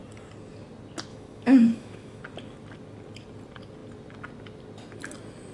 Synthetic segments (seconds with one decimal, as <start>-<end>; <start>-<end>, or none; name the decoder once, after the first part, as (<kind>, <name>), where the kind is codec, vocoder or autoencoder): 1.1-2.2 (autoencoder, DAC-VAE)